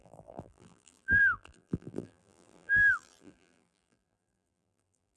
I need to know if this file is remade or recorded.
remade